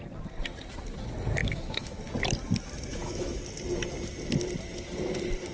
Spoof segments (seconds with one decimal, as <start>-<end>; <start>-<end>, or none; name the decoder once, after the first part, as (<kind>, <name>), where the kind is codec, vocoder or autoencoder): 1.4-2.0 (autoencoder, DAC-VAE); 2.9-3.4

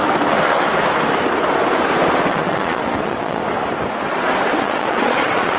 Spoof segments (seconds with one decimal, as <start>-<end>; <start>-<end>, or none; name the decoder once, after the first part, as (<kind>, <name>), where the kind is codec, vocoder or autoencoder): 2.3-3.4 (vocoder, Vocos); 4.6-5.6